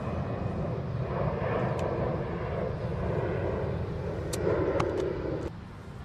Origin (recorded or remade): recorded